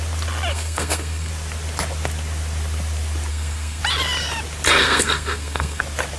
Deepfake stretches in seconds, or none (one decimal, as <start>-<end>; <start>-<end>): 0.5-1.3; 3.3-3.8; 4.8-5.8

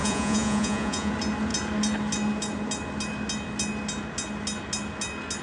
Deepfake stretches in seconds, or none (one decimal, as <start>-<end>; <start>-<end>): 0.0-1.1

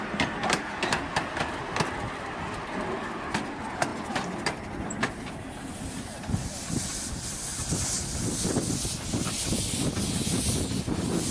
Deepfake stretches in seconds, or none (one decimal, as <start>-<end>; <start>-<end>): none

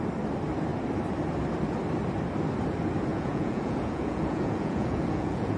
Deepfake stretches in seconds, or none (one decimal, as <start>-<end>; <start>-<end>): 3.1-5.6

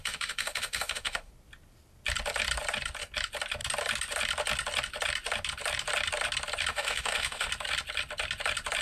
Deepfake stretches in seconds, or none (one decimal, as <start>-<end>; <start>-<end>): 0.0-1.3; 6.7-7.5